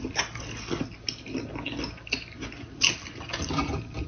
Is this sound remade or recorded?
recorded